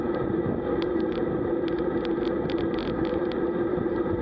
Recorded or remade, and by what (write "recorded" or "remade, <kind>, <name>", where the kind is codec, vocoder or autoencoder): recorded